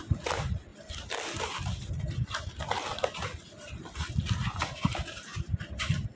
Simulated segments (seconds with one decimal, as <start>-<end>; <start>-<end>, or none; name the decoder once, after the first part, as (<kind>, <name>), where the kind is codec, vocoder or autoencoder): none

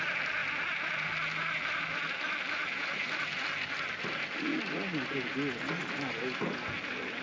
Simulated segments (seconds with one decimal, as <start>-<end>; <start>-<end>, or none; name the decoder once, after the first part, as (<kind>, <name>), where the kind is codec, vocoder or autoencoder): none

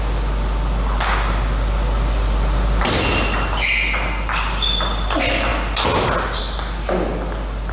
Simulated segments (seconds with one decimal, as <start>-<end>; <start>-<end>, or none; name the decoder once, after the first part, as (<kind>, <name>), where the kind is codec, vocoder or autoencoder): none

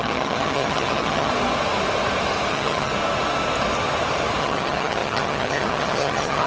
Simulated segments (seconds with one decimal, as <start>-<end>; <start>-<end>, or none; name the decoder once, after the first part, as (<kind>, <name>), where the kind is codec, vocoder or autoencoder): 0.0-1.3 (vocoder, HiFi-GAN); 2.5-2.9; 4.4-6.5

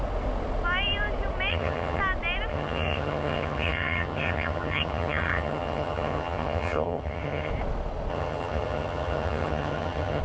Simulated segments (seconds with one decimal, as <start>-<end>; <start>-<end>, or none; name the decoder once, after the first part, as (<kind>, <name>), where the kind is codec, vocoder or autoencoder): 1.5-2.0 (vocoder, HiFi-GAN); 2.5-7.5; 8.1-10.2

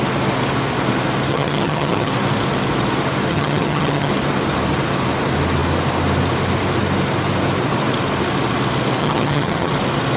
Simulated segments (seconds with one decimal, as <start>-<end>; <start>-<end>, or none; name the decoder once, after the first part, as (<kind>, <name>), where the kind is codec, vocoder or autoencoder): 1.3-2.1 (vocoder, HiFi-GAN); 3.3-4.1; 9.0-9.7